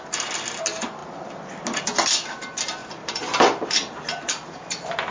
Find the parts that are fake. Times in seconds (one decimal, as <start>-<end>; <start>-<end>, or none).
1.0-1.6